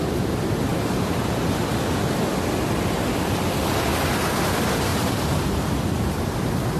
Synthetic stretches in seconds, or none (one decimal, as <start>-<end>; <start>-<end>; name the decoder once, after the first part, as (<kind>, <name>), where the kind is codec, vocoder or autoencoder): 0.7-1.6 (vocoder, BigVGAN v2); 4.9-5.7